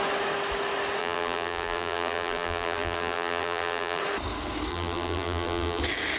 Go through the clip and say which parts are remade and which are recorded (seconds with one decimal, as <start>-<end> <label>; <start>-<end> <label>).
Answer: 0.0-1.0 recorded; 1.0-4.0 remade; 4.0-4.7 recorded; 4.7-5.8 remade; 5.8-6.2 recorded